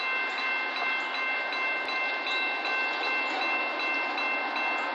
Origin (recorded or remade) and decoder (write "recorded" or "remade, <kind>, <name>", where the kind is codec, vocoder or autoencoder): recorded